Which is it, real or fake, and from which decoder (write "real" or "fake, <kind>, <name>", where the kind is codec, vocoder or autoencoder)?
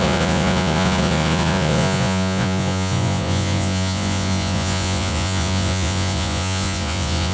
fake, vocoder, Vocos